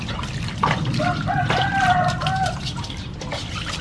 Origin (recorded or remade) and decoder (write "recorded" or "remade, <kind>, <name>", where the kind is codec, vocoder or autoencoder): recorded